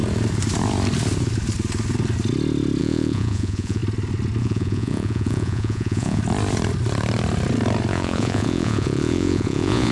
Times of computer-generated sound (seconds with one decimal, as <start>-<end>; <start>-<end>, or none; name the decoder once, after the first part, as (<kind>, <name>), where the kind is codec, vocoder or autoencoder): 2.8-3.8 (vocoder, Vocos); 4.4-6.2; 7.9-9.9